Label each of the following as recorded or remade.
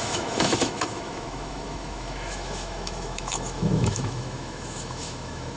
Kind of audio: remade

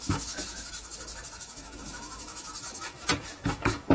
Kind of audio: remade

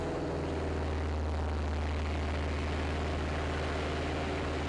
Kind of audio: recorded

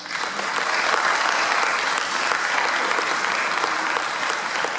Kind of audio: recorded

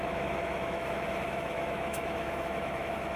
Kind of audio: remade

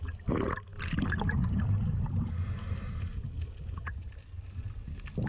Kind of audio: recorded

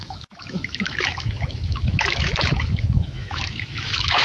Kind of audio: remade